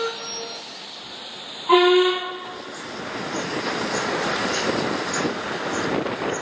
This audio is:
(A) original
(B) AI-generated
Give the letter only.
A